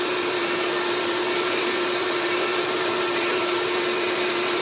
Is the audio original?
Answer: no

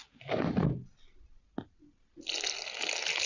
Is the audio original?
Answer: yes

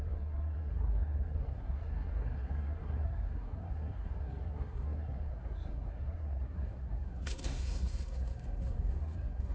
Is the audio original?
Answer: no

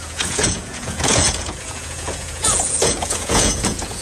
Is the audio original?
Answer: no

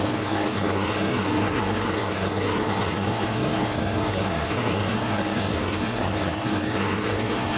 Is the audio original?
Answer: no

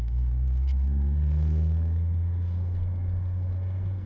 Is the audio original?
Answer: no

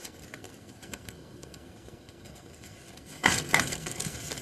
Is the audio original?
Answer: no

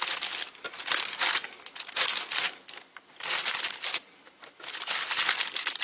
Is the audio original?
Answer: yes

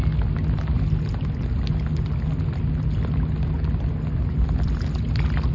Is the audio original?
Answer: yes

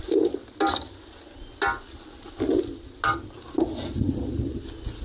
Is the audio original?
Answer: yes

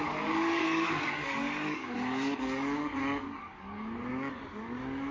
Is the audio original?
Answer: no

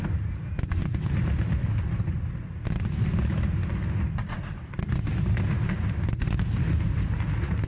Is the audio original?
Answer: yes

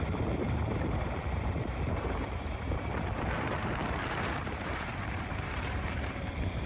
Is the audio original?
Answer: no